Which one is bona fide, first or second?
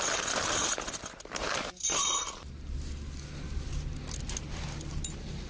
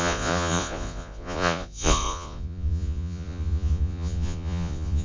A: first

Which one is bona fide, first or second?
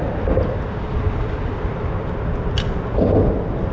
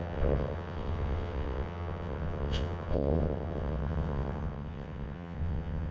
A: first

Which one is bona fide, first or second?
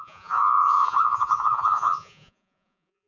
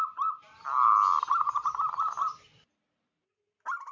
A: second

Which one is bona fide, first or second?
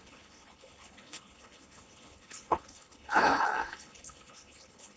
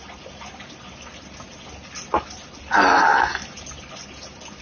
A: second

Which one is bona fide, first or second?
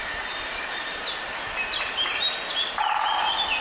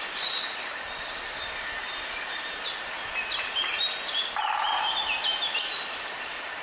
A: first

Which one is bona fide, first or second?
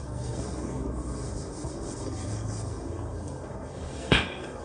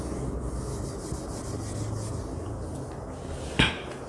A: second